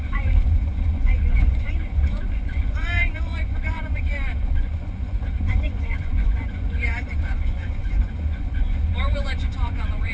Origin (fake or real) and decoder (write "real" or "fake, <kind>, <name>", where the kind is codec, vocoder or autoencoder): fake, vocoder, Vocos